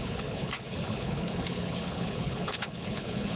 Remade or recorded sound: remade